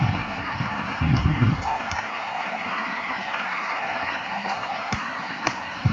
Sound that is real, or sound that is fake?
fake